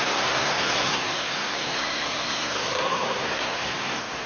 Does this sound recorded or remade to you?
remade